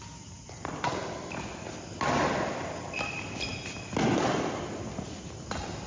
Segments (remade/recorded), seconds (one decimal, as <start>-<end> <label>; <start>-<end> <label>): 0.0-5.9 recorded